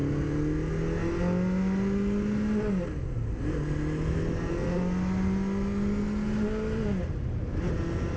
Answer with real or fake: real